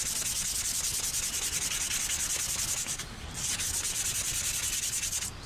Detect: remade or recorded recorded